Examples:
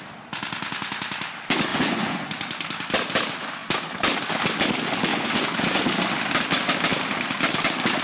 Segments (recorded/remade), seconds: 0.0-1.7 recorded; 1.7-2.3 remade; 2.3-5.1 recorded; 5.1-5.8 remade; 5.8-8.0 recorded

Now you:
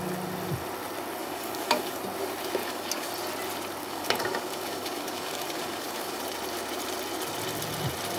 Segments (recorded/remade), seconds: 0.0-1.2 recorded; 1.2-2.0 remade; 2.0-2.6 recorded; 2.6-3.1 remade; 3.1-3.8 recorded; 3.8-6.2 remade; 6.2-8.2 recorded

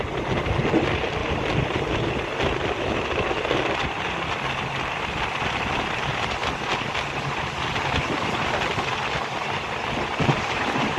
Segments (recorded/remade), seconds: 0.0-1.2 recorded; 1.2-1.9 remade; 1.9-11.0 recorded

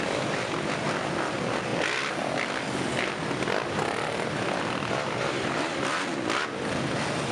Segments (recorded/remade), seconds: 0.0-7.3 recorded

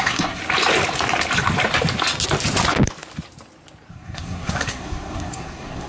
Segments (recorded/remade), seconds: 0.0-0.4 remade; 0.4-3.9 recorded; 3.9-5.9 remade